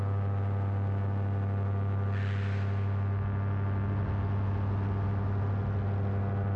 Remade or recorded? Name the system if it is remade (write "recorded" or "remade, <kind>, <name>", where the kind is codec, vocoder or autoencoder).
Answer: recorded